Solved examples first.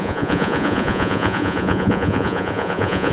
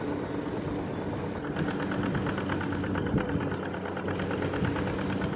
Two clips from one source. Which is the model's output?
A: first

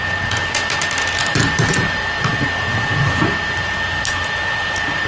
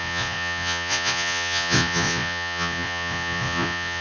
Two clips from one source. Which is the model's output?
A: second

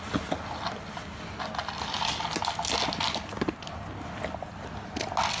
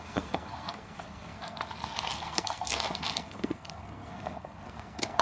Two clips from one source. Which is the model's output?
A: second